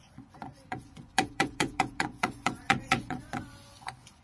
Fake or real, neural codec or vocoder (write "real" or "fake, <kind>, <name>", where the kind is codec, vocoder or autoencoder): fake, vocoder, Vocos